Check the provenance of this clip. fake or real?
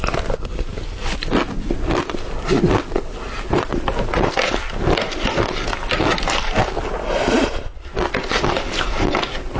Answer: real